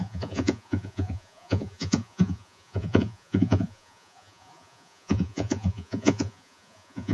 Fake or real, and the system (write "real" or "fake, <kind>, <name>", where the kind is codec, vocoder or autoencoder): fake, vocoder, Vocos